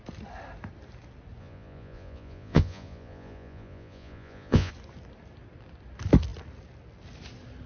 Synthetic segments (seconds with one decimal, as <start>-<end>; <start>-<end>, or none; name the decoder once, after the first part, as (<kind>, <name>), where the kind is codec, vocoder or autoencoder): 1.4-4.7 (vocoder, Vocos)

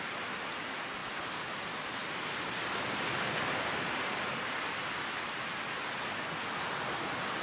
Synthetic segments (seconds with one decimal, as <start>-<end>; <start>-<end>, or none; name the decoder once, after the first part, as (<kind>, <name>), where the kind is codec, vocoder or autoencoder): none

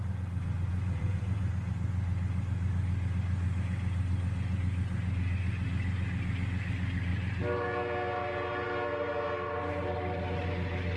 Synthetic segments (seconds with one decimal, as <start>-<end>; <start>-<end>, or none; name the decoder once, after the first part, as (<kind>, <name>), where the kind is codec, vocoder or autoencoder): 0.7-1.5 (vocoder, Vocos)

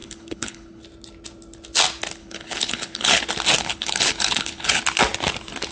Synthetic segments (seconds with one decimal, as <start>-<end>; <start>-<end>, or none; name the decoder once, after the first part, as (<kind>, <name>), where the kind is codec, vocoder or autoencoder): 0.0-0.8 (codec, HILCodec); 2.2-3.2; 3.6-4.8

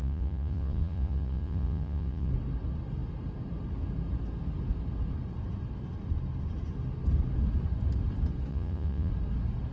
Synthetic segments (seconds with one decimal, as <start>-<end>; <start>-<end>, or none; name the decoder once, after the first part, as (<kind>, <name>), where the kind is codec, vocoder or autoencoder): 0.0-2.3 (vocoder, Vocos); 8.5-9.1

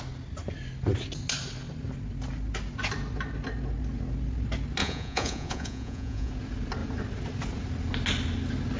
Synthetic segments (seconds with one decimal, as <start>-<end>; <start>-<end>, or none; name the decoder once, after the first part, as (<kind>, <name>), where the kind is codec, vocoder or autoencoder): 4.8-6.3 (vocoder, Vocos)